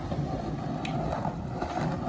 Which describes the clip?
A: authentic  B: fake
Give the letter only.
A